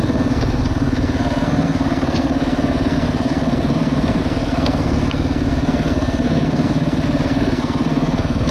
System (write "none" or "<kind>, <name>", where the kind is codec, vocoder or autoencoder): codec, SNAC